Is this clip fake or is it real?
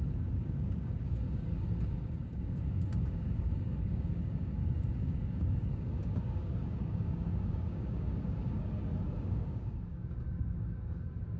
fake